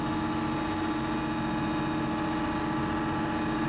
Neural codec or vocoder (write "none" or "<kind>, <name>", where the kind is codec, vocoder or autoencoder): none